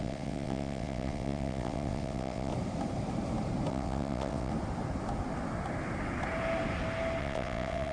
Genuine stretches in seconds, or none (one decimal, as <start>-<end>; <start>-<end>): 2.5-3.7; 4.5-7.2